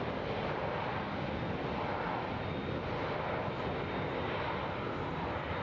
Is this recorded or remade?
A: recorded